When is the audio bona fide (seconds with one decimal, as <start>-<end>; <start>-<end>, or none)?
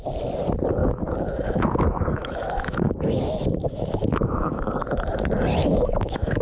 0.0-0.8; 4.6-5.6